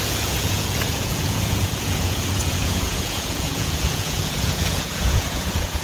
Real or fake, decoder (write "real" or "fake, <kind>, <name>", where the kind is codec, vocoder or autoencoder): fake, vocoder, Vocos